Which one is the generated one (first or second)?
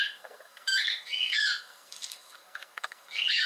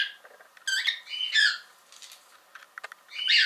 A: first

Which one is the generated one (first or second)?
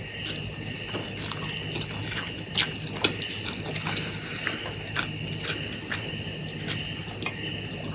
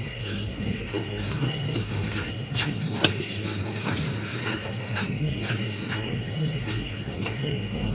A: second